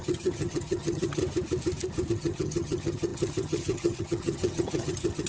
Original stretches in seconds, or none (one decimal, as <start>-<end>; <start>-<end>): 1.2-2.1